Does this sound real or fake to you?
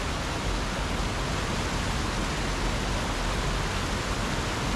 real